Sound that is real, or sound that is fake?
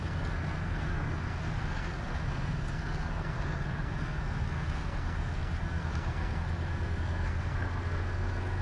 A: fake